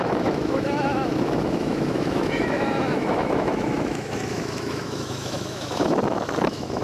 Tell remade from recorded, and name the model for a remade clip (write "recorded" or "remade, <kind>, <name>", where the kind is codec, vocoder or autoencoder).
remade, autoencoder, DAC-VAE